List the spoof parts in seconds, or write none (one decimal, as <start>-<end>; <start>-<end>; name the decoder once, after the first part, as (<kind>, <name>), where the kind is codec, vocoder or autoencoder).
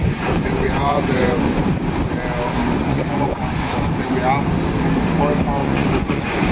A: 0.0-1.6 (vocoder, Vocos); 2.8-3.9; 5.6-6.5